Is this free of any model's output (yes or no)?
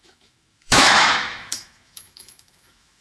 no